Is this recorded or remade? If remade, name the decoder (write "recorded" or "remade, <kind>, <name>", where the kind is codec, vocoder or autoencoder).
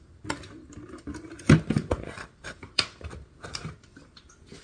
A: remade, vocoder, BigVGAN v2